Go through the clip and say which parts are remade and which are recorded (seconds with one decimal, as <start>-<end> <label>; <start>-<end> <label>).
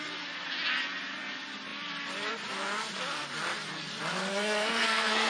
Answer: 0.0-4.3 recorded; 4.3-5.3 remade